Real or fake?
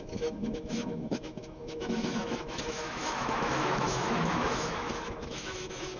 fake